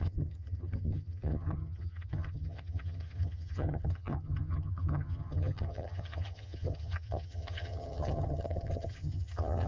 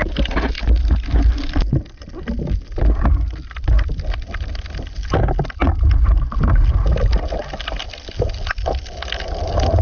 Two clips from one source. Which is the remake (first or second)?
first